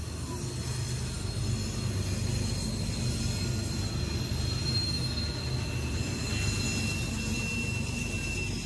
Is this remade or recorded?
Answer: recorded